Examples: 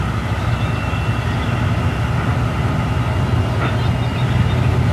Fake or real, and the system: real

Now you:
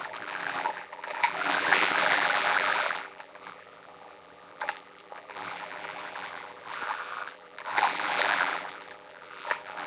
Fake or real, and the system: fake, vocoder, BigVGAN v2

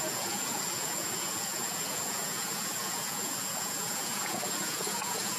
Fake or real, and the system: fake, vocoder, Vocos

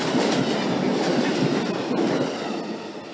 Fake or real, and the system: real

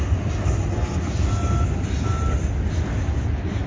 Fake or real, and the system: real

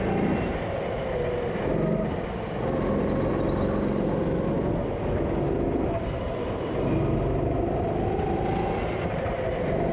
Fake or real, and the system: real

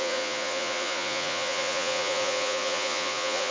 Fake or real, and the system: fake, vocoder, Vocos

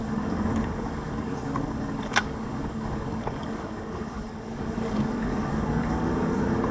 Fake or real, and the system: fake, codec, DAC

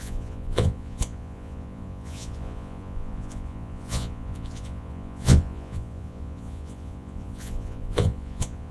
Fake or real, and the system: fake, vocoder, Vocos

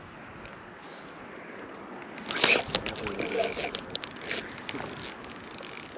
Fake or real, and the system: real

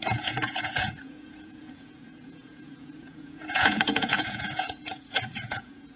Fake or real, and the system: fake, vocoder, Vocos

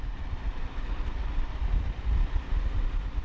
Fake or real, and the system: real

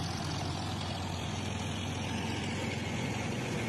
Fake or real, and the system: fake, vocoder, Vocos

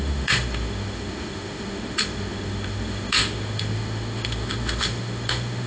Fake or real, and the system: fake, autoencoder, DAC-VAE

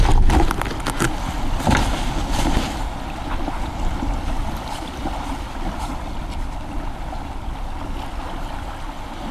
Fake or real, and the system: real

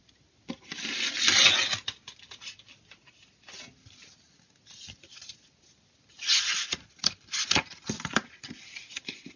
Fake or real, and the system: real